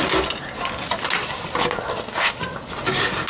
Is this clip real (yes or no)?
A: yes